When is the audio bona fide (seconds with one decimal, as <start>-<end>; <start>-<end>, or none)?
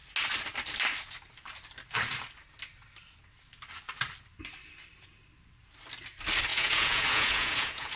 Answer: 0.0-6.5